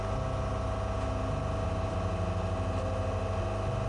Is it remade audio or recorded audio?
recorded